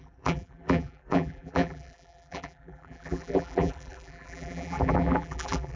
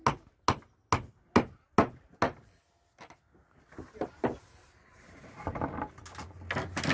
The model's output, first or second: first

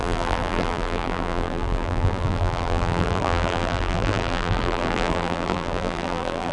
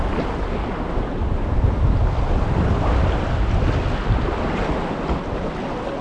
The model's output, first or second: first